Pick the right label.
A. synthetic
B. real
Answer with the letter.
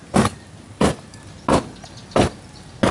B